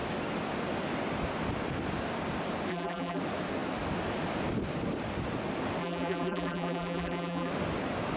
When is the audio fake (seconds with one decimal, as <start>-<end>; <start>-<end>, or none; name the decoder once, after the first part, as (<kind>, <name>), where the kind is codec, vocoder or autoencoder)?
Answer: 2.7-3.2 (vocoder, BigVGAN v2); 5.8-7.5